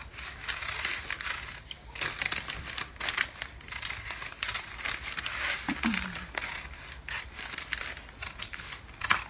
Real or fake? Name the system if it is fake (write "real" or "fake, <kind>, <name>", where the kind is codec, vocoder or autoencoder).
real